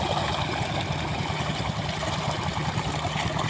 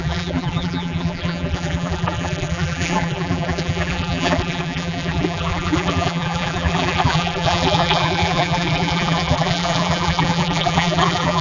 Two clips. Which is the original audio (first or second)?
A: first